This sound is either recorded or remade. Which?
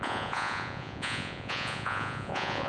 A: remade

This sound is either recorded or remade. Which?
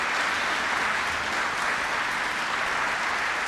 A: recorded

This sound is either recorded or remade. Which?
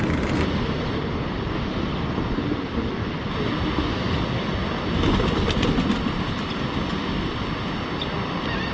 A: recorded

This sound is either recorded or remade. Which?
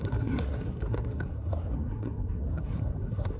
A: remade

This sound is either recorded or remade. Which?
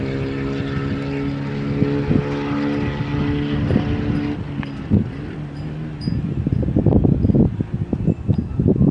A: recorded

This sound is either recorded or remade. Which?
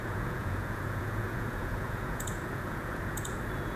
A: remade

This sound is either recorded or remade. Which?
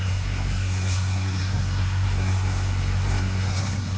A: remade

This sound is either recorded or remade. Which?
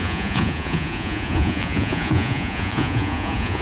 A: remade